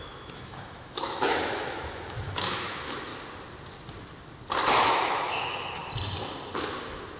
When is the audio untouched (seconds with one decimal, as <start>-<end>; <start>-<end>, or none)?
3.1-4.9; 5.8-7.2